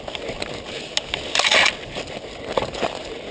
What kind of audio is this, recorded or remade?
recorded